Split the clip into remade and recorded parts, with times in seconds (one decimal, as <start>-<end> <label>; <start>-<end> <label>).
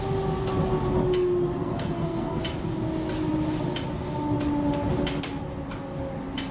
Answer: 0.0-1.6 recorded; 1.6-2.4 remade; 2.4-6.5 recorded